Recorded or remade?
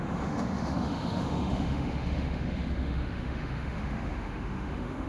remade